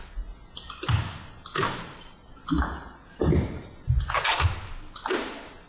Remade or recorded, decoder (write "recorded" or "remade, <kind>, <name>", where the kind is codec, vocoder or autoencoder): recorded